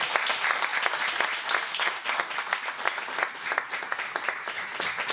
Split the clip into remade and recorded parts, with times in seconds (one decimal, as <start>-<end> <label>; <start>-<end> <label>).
0.0-5.1 recorded